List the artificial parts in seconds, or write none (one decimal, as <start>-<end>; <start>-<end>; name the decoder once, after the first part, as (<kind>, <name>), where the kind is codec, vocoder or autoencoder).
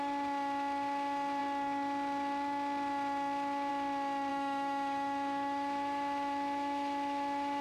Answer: 4.3-7.6 (autoencoder, DAC-VAE)